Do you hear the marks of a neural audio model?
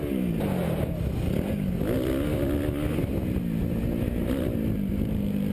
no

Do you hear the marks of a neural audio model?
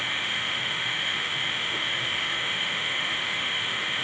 yes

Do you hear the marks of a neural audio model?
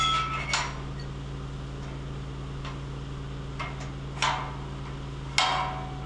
no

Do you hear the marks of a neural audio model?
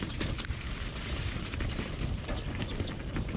no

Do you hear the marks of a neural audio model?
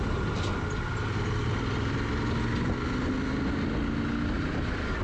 no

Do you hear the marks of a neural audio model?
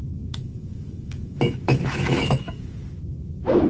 yes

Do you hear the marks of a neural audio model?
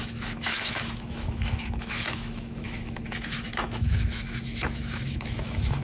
yes